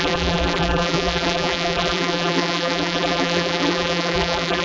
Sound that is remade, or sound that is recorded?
remade